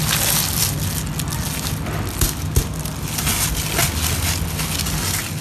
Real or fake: real